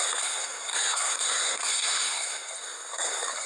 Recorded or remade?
remade